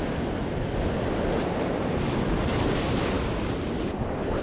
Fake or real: real